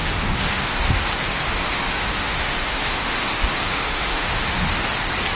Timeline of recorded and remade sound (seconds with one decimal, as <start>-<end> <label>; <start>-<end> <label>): 0.0-0.8 remade; 0.8-1.6 recorded; 1.6-4.8 remade; 4.8-5.4 recorded